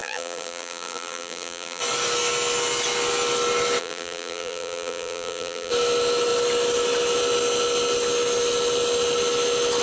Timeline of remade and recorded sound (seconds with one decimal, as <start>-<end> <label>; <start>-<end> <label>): 0.0-1.8 remade; 1.8-3.8 recorded; 3.8-5.7 remade; 5.7-9.8 recorded